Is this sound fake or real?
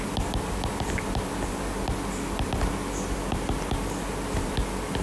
real